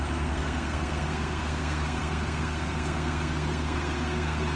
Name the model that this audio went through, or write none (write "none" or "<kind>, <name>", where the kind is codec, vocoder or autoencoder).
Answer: codec, SNAC